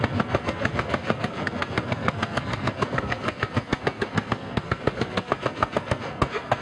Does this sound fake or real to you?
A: fake